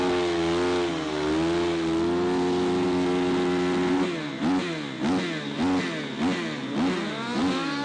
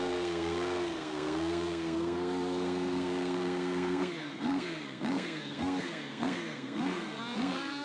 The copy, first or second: second